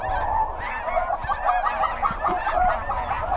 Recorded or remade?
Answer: recorded